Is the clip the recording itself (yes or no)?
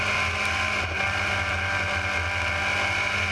yes